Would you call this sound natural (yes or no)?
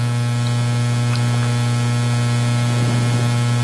yes